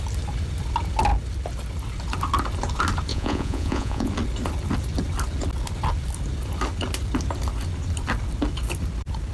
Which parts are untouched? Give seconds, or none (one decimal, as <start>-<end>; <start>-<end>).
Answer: 0.0-3.1; 4.1-9.3